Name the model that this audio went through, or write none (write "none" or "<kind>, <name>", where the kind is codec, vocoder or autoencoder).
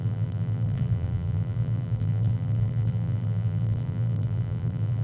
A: vocoder, BigVGAN v2